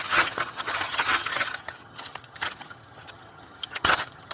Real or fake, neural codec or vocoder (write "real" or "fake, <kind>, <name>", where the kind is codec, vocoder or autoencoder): fake, vocoder, HiFi-GAN